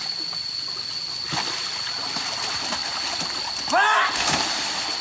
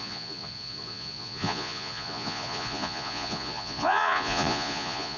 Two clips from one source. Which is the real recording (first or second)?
first